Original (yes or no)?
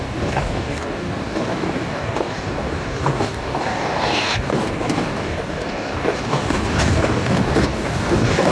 no